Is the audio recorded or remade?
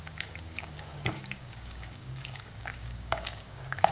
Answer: remade